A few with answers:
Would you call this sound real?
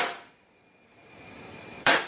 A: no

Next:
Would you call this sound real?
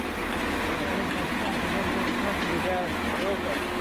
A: yes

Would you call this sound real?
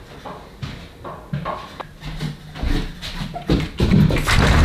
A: yes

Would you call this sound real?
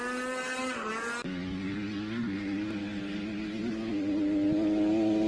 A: yes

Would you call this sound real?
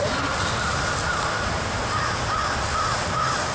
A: yes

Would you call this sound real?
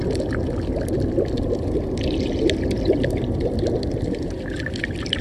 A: yes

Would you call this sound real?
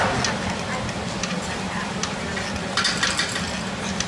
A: yes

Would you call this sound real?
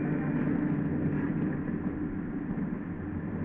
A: no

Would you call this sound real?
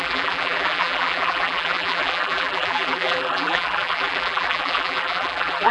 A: no